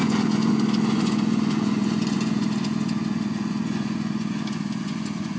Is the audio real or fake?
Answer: fake